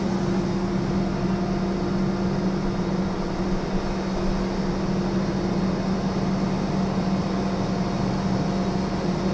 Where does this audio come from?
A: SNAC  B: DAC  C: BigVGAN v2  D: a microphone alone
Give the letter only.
D